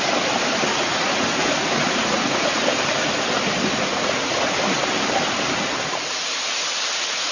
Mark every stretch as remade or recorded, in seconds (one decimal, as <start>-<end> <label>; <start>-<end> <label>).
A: 0.0-0.7 recorded; 0.7-2.5 remade; 2.5-3.9 recorded; 3.9-4.5 remade; 4.5-7.3 recorded